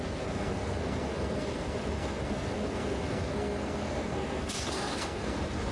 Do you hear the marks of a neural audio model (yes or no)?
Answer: yes